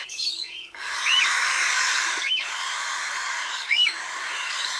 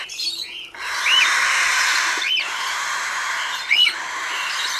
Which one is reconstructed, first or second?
first